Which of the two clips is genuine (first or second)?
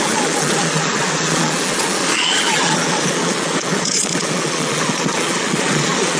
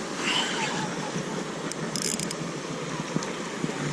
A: second